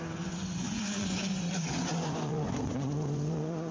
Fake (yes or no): yes